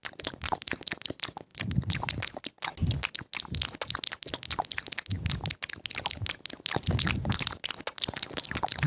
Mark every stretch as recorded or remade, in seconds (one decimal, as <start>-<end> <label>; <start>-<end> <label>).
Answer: 0.0-2.7 remade; 2.7-8.0 recorded; 8.0-8.9 remade